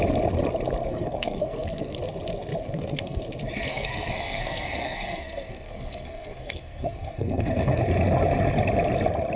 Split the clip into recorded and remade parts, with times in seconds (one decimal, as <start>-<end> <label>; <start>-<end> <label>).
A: 0.0-0.9 recorded; 0.9-2.0 remade; 2.0-2.6 recorded; 2.6-3.2 remade; 3.2-3.7 recorded; 3.7-7.8 remade; 7.8-9.4 recorded